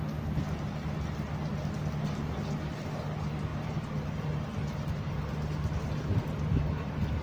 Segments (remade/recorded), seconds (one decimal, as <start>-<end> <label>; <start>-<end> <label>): 0.0-7.2 recorded

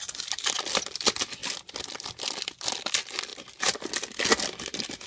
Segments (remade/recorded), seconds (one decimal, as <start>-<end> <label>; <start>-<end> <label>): 0.0-5.1 recorded

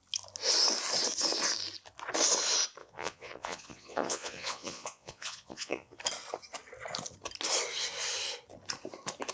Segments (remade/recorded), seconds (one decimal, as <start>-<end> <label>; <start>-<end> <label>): 0.0-2.8 recorded; 2.8-6.0 remade; 6.0-9.3 recorded

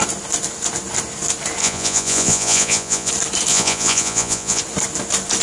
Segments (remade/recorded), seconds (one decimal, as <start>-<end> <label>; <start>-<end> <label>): 0.0-1.6 recorded; 1.6-3.1 remade; 3.1-3.5 recorded; 3.5-4.6 remade; 4.6-5.4 recorded

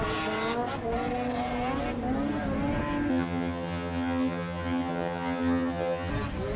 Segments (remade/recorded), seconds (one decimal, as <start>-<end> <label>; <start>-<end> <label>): 0.0-3.1 recorded; 3.1-6.1 remade; 6.1-6.6 recorded

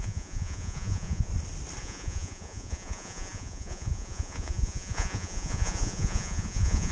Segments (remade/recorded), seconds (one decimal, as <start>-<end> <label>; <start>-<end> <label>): 0.0-1.3 remade; 1.3-1.8 recorded; 1.8-6.9 remade

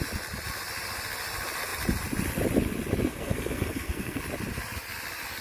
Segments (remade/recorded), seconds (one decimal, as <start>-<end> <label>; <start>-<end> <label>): 0.0-3.1 recorded; 3.1-4.2 remade; 4.2-5.4 recorded

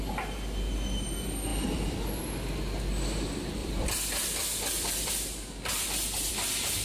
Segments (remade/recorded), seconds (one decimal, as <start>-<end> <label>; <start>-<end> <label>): 0.0-1.5 recorded; 1.5-2.2 remade; 2.2-3.6 recorded; 3.6-5.1 remade; 5.1-5.7 recorded; 5.7-6.3 remade; 6.3-6.8 recorded